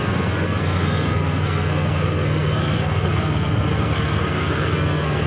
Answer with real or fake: fake